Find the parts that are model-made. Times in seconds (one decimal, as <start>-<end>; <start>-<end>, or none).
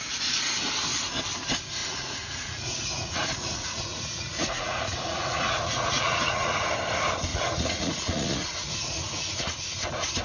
1.8-6.7; 7.3-9.6